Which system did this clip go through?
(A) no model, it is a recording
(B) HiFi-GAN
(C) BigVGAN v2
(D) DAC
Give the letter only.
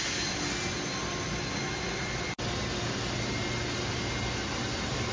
A